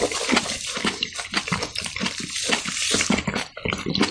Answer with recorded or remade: recorded